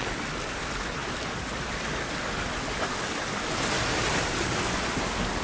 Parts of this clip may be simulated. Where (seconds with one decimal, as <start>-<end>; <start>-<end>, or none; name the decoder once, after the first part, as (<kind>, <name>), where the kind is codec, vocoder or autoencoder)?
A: none